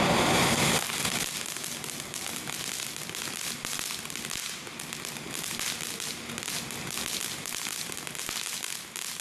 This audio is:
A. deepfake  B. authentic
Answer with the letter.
B